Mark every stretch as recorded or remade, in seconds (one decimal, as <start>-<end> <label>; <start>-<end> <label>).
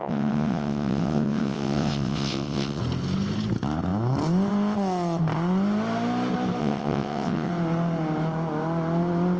0.0-2.8 remade; 2.8-6.6 recorded; 6.6-7.5 remade; 7.5-9.4 recorded